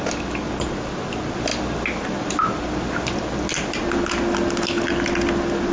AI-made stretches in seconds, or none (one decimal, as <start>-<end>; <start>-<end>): none